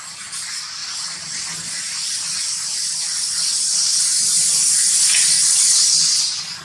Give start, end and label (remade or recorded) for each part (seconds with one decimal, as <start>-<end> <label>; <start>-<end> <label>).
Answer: 0.0-6.6 recorded